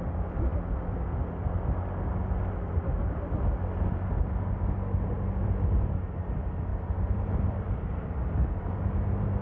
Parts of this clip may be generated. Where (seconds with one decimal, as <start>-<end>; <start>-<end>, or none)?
6.7-7.9